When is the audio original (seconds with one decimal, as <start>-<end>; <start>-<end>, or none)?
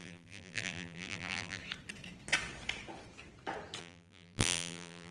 1.6-3.8